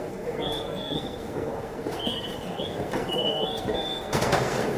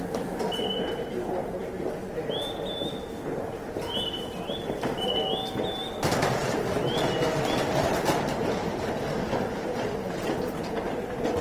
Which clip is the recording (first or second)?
second